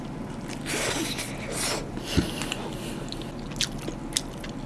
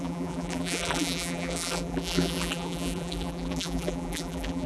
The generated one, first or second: second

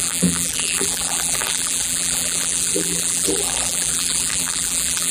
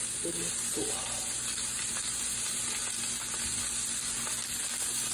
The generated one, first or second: first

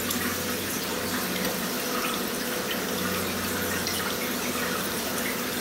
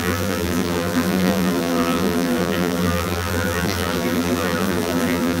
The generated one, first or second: second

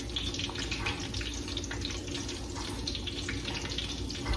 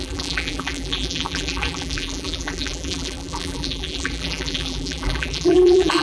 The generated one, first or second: second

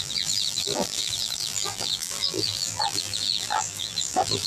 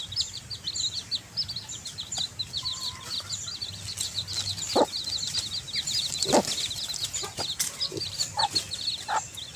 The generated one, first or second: first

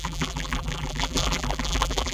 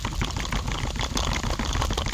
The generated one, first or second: first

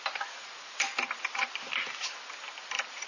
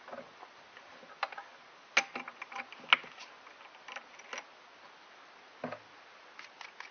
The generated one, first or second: first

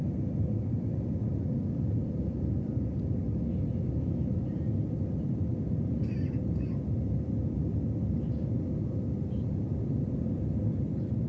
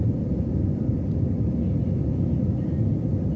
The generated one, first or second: second